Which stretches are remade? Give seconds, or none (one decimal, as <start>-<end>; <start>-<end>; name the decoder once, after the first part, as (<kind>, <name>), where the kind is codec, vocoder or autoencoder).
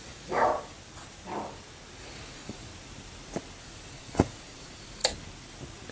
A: 0.0-0.5 (vocoder, Vocos); 2.0-2.7; 3.6-5.0